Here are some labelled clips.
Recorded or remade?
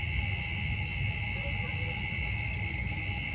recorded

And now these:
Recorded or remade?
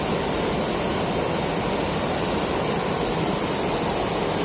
recorded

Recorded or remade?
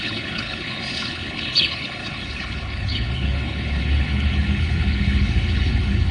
remade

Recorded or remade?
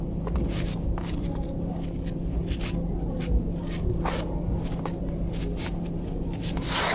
recorded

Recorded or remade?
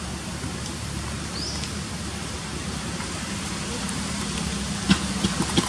recorded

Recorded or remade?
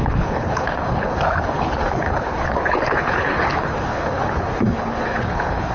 remade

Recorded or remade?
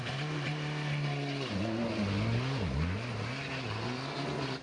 recorded